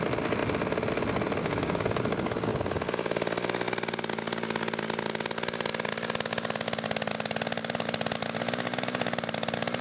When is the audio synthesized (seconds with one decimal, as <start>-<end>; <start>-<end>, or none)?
1.4-2.0